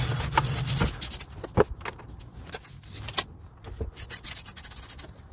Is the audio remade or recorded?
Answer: recorded